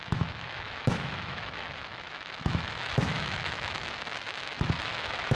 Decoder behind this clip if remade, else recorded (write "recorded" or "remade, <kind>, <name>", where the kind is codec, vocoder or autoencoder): remade, autoencoder, DAC-VAE